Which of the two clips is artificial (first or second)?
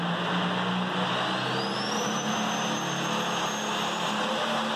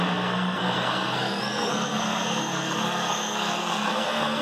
second